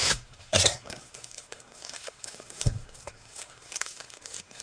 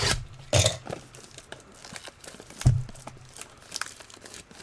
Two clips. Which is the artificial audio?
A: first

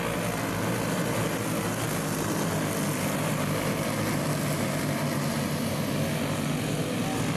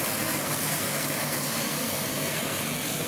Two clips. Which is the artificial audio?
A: second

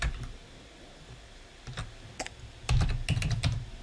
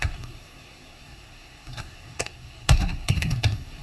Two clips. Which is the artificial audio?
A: second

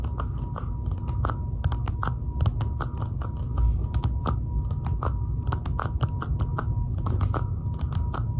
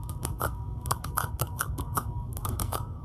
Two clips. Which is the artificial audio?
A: second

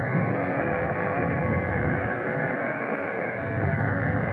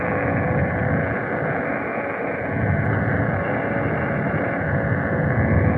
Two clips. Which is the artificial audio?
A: first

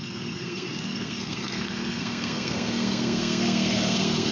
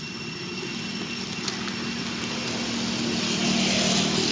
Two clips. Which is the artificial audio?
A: first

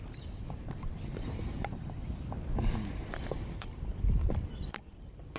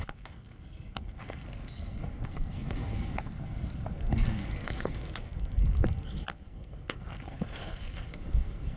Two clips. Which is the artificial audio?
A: second